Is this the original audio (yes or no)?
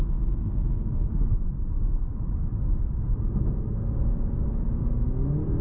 yes